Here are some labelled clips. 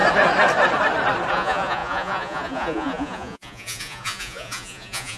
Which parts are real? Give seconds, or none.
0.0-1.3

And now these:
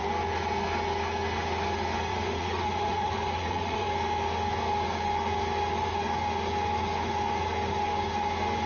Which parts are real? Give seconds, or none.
0.0-2.1; 3.9-8.7

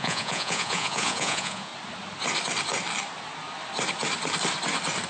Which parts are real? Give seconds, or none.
1.7-5.1

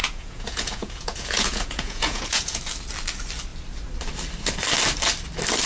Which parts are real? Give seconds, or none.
2.6-5.7

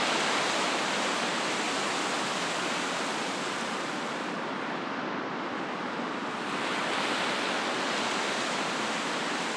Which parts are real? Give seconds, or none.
0.0-9.6